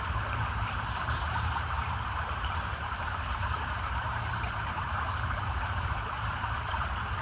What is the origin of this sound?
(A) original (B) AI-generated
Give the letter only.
B